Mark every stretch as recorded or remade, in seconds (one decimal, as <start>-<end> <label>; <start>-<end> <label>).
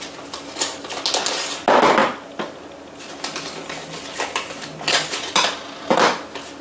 0.0-6.6 recorded